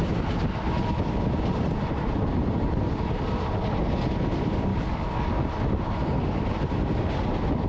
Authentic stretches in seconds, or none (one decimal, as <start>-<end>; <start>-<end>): 0.0-4.7; 5.3-7.7